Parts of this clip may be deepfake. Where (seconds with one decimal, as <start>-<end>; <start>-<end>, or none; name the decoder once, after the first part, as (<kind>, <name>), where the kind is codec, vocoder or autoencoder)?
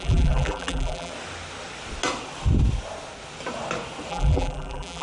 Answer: 0.0-1.1 (vocoder, BigVGAN v2); 4.1-5.0